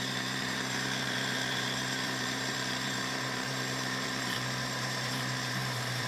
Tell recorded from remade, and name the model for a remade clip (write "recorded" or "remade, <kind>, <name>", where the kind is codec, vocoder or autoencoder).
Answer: remade, vocoder, BigVGAN v2